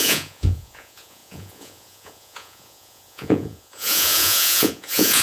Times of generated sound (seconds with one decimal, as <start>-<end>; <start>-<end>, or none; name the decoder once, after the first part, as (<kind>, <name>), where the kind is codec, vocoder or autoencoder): 0.0-5.2 (vocoder, Vocos)